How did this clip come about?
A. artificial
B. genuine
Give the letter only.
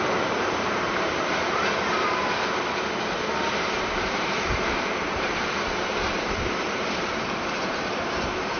A